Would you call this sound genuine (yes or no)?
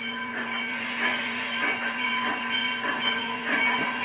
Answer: no